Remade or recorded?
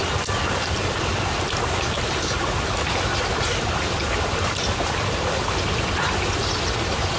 recorded